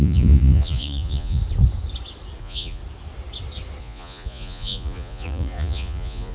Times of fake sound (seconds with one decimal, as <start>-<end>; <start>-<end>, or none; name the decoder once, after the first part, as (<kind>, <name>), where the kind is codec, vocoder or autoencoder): 0.0-1.4 (vocoder, Vocos); 2.4-2.8; 3.8-6.3